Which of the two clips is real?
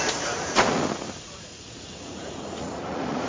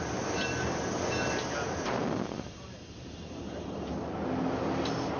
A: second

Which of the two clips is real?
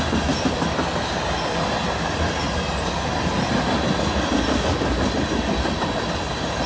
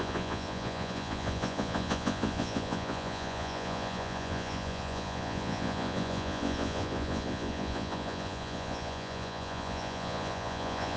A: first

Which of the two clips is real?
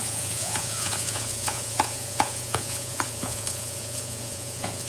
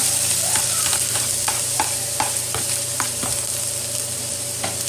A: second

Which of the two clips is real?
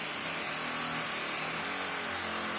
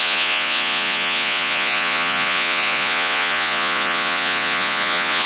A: first